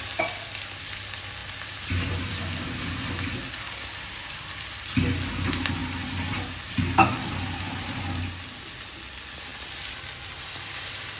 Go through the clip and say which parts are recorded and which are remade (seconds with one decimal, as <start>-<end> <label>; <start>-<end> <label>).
0.0-11.2 recorded